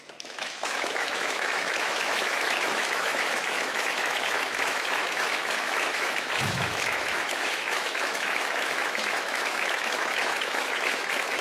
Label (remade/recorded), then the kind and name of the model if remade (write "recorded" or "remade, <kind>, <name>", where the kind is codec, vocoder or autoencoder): remade, autoencoder, DAC-VAE